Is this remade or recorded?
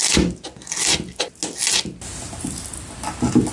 recorded